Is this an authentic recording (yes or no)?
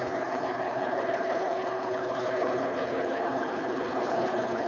no